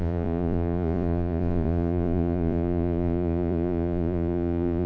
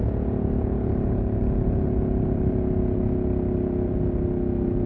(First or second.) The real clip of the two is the second